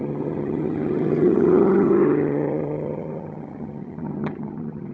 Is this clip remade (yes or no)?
yes